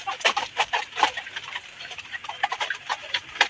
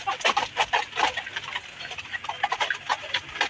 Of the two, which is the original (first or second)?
second